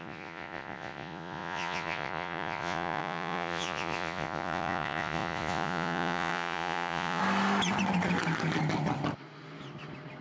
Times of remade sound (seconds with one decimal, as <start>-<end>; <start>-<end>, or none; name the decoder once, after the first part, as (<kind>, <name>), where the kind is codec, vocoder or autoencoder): 0.0-7.2 (vocoder, Vocos)